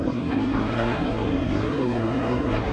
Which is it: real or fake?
fake